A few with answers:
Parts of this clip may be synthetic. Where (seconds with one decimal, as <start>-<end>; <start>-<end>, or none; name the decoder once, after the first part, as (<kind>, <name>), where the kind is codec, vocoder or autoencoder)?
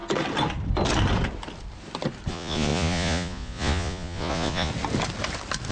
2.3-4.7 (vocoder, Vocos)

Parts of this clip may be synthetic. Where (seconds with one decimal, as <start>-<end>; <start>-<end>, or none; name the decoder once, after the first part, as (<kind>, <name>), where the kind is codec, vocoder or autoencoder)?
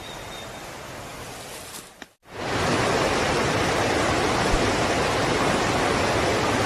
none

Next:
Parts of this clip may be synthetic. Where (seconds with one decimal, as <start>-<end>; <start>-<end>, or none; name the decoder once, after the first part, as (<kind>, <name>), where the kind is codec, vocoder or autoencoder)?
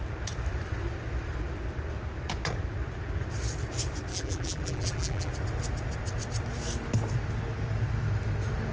4.1-5.3 (vocoder, BigVGAN v2)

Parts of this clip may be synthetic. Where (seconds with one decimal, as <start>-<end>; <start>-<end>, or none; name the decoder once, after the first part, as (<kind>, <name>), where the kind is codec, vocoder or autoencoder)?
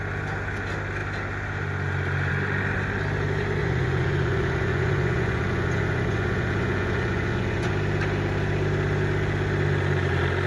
3.6-7.7 (vocoder, Vocos)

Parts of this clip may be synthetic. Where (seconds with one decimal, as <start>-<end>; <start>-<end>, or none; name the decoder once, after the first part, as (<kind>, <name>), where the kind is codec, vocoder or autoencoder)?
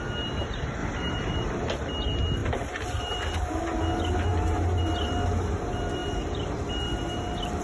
0.8-1.7 (vocoder, BigVGAN v2); 2.4-3.6; 6.0-6.6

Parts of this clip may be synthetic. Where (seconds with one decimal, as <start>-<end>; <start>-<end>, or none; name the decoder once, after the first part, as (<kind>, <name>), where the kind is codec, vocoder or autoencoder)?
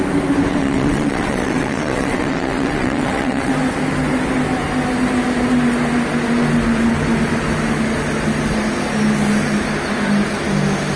0.5-3.5 (vocoder, WaveNeXt)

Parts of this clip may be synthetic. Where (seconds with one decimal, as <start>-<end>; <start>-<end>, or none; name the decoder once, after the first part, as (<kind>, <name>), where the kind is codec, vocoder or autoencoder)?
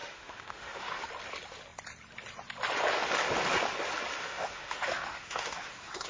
0.0-1.0 (autoencoder, DAC-VAE); 4.2-6.1